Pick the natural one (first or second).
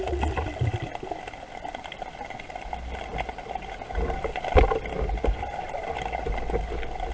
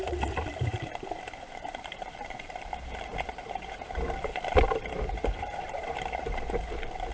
first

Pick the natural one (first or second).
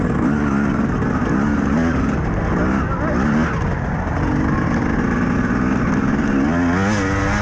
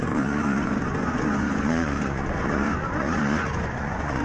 first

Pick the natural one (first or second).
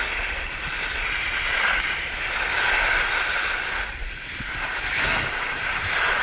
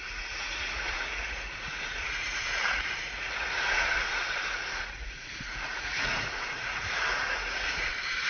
first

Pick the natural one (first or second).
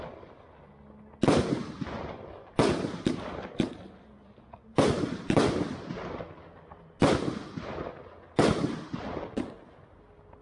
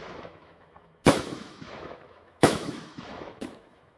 first